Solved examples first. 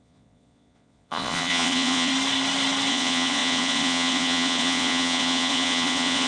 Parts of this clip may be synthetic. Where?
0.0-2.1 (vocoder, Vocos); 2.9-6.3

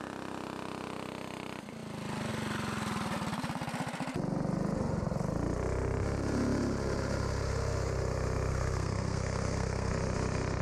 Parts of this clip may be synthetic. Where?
8.5-9.9 (codec, SNAC)

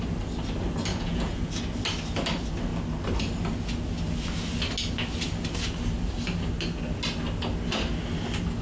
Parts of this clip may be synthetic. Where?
0.9-1.5 (vocoder, Vocos)

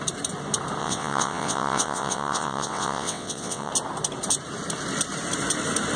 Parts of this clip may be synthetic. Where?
0.8-3.7 (vocoder, WaveNeXt)

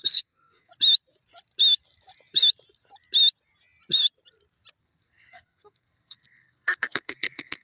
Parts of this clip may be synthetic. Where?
0.0-0.7 (codec, SNAC); 4.8-7.6

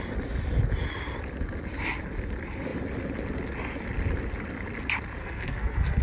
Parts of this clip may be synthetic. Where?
5.2-6.0 (codec, SNAC)

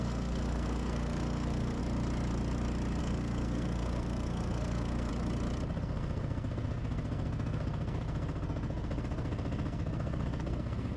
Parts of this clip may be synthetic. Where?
0.0-1.8 (codec, SNAC); 3.0-5.1; 5.8-11.0